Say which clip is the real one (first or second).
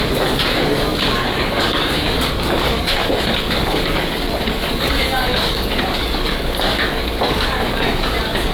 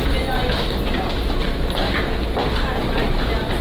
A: second